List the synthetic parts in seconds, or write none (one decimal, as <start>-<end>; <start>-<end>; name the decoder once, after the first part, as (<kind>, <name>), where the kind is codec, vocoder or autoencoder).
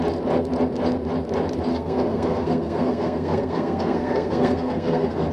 1.7-5.3 (codec, SNAC)